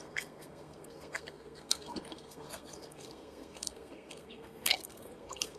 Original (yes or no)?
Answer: no